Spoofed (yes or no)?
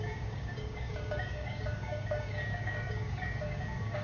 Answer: yes